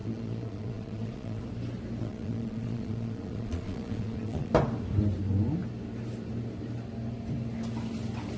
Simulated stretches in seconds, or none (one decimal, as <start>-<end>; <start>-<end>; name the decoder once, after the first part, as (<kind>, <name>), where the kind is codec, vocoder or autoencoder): 0.0-1.4 (vocoder, Vocos); 2.0-4.5